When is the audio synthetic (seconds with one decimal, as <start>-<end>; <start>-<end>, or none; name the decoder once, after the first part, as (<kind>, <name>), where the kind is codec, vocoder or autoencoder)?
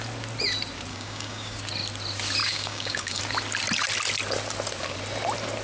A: 0.9-1.6 (codec, DAC); 2.4-3.2